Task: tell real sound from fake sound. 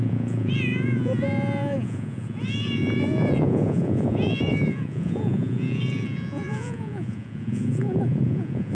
fake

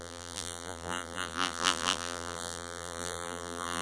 fake